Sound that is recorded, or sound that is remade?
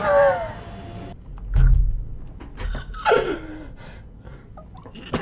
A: recorded